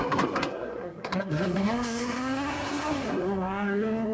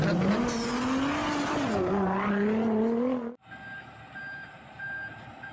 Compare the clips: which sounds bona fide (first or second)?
second